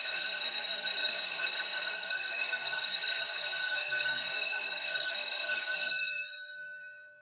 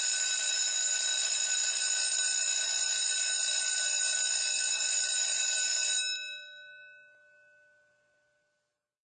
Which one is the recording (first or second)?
second